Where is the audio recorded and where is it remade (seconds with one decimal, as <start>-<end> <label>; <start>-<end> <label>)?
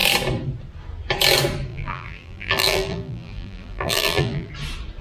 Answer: 0.0-1.7 recorded; 1.7-4.5 remade; 4.5-5.0 recorded